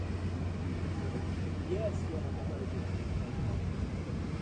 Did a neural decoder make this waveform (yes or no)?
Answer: no